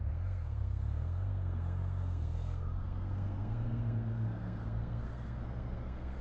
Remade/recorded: remade